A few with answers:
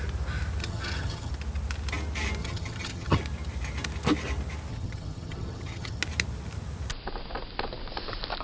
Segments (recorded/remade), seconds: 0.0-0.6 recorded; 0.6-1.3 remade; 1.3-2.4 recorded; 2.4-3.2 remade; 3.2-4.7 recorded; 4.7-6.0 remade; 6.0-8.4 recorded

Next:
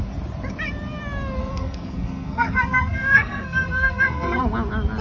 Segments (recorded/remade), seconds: 0.0-1.4 recorded; 1.4-4.4 remade; 4.4-5.0 recorded

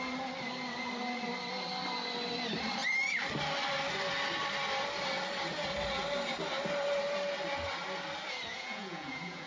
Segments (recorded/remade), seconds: 0.0-8.5 recorded; 8.5-9.5 remade

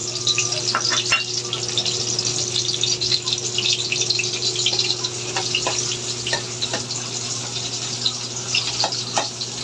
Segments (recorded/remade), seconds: 0.0-9.6 recorded

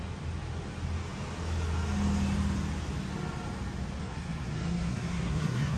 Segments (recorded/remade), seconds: 0.0-4.0 recorded; 4.0-5.8 remade

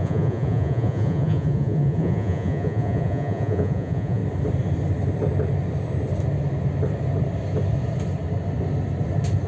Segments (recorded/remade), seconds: 0.0-4.2 remade; 4.2-9.5 recorded

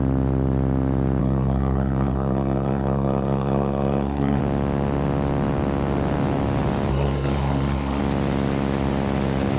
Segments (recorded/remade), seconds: 0.0-1.2 recorded; 1.2-4.4 remade; 4.4-6.9 recorded; 6.9-8.0 remade; 8.0-9.6 recorded

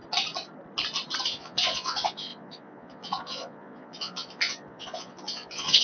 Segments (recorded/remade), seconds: 0.0-1.2 recorded; 1.2-5.8 remade